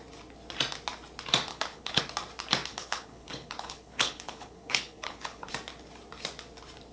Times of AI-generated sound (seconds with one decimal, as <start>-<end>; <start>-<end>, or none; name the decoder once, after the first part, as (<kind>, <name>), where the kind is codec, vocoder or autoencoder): 1.5-2.0 (codec, HILCodec); 2.7-5.5